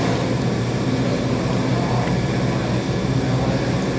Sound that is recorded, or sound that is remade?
recorded